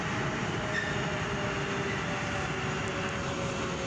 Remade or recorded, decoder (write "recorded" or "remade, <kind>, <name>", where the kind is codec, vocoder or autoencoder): recorded